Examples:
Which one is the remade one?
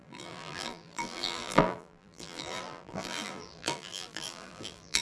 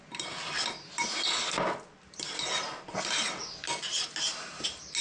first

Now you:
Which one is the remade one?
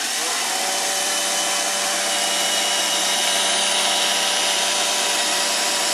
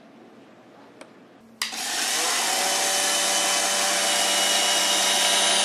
first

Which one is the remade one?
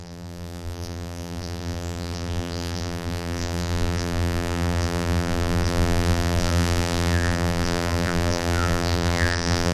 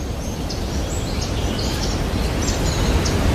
first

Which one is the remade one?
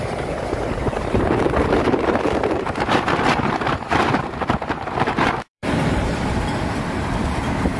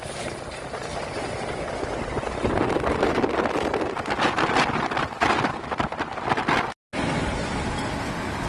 first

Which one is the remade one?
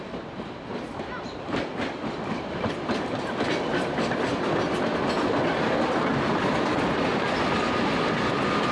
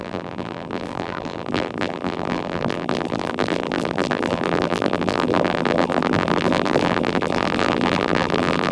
second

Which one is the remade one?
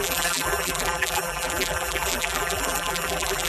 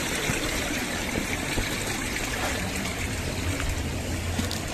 first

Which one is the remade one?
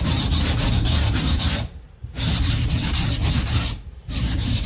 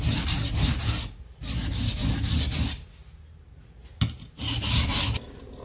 first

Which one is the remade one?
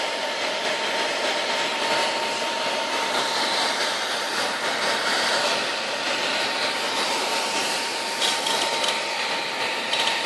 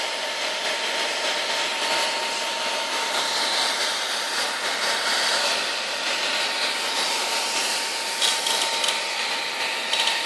first